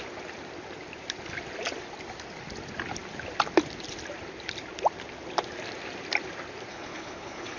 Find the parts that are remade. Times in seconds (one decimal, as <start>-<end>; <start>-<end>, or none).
6.7-7.6